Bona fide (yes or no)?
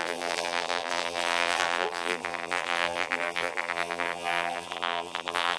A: no